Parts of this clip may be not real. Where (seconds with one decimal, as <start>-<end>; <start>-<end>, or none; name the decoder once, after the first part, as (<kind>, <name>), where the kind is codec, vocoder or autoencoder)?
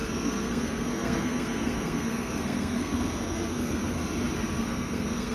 0.0-4.0 (codec, SNAC); 4.6-5.3